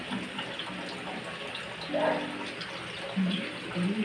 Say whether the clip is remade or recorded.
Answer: recorded